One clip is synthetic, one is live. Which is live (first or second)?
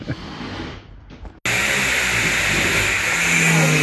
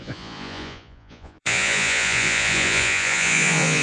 first